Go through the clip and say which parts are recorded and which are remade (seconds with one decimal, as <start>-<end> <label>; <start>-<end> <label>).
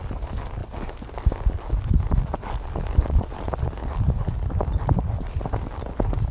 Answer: 0.0-6.3 recorded